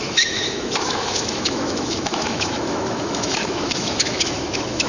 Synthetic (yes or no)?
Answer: yes